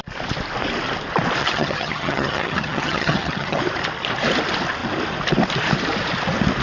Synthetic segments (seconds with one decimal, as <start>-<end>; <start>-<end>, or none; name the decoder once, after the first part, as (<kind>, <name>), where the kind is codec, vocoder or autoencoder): 1.4-3.6 (vocoder, HiFi-GAN)